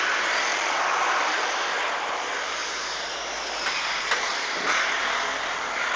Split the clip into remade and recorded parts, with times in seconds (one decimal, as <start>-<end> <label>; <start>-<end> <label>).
0.0-0.5 recorded; 0.5-1.9 remade; 1.9-2.6 recorded; 2.6-4.0 remade; 4.0-6.0 recorded